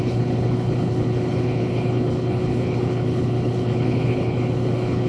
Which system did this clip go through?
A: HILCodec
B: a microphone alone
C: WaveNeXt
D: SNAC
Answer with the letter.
A